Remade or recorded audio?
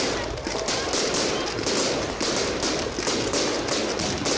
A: recorded